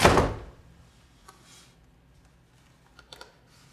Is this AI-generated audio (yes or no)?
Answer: no